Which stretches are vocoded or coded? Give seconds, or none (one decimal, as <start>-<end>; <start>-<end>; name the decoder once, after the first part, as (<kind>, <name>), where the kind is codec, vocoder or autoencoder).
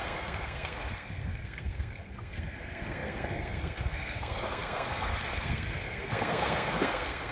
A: 0.0-7.3 (codec, SNAC)